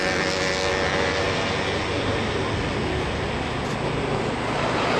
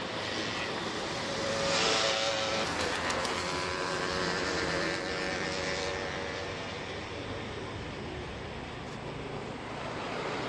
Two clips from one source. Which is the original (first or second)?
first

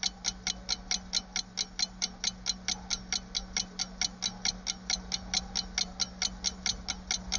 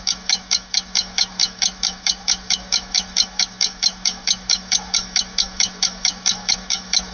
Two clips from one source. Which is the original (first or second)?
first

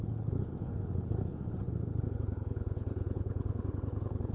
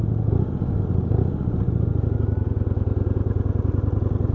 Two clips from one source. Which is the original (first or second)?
second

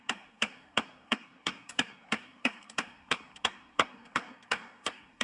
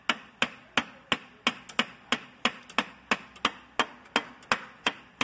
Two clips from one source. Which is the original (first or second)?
second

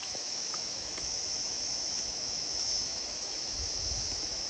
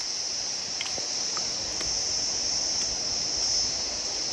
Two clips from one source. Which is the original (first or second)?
second